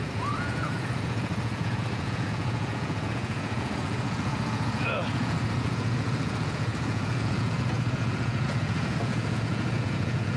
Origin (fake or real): fake